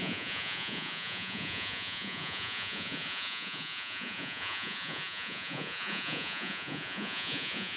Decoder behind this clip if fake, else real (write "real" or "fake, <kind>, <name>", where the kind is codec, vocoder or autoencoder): fake, vocoder, Vocos